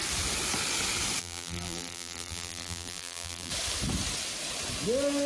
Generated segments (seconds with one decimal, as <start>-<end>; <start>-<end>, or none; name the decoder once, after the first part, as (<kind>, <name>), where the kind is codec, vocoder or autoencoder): 1.2-3.5 (vocoder, BigVGAN v2)